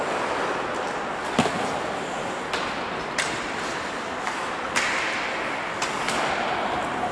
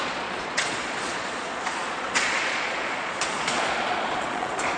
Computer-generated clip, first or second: second